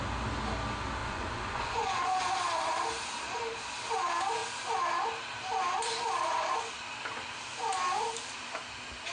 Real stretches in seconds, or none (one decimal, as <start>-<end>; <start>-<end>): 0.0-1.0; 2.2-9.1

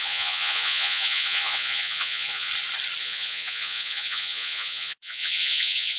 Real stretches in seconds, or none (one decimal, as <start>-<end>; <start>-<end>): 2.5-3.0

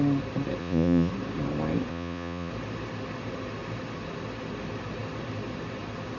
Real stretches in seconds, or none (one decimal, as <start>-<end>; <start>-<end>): 0.0-0.6; 1.1-1.9; 2.5-6.2

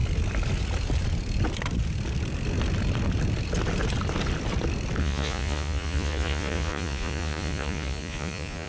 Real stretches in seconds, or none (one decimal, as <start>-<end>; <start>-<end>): 0.0-5.0

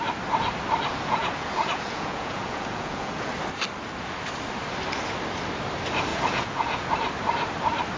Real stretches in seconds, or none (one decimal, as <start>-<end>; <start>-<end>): 0.0-0.9; 3.3-6.1; 6.9-8.0

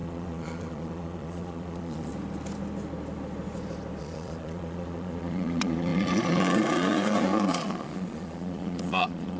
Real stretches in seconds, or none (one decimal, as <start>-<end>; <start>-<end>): 2.1-4.0